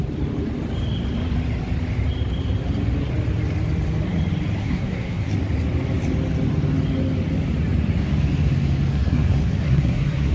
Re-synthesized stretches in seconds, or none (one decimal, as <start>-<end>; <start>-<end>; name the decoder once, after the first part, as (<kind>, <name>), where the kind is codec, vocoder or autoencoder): 4.6-5.3 (codec, SNAC); 8.9-10.3